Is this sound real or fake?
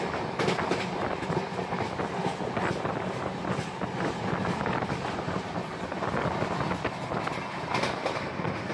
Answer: real